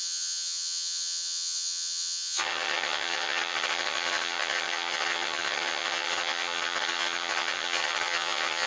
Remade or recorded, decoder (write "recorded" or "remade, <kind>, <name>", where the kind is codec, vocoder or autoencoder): remade, vocoder, HiFi-GAN